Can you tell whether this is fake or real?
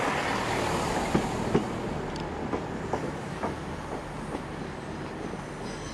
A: real